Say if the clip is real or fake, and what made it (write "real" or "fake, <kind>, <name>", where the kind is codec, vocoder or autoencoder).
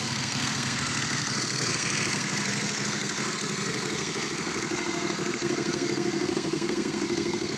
fake, codec, SNAC